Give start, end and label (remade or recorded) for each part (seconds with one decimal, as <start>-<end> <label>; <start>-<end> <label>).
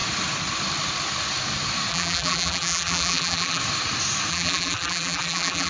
0.0-1.9 recorded; 1.9-3.6 remade; 3.6-4.3 recorded; 4.3-5.7 remade